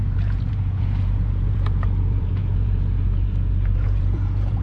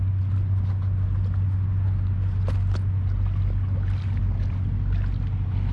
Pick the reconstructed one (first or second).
first